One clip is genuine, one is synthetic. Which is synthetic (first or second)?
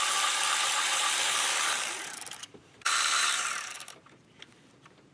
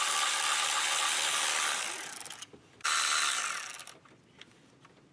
first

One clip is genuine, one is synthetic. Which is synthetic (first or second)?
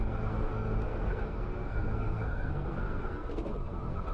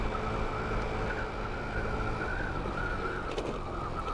first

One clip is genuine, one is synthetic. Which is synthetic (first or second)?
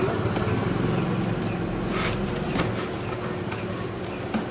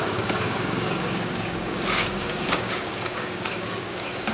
second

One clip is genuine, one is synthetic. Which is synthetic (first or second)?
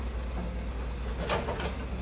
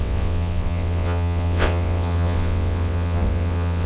second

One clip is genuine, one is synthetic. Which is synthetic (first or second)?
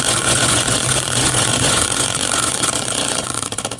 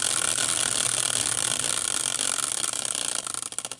first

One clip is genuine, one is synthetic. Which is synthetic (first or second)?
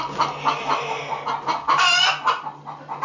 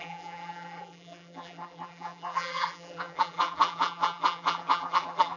second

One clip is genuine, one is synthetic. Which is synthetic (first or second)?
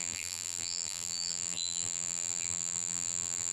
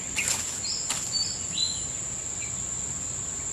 first